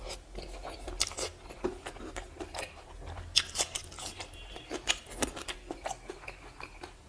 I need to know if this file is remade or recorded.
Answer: recorded